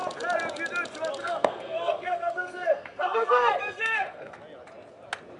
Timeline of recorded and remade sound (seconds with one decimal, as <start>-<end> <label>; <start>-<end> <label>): 0.0-1.2 recorded; 1.2-4.4 remade; 4.4-5.4 recorded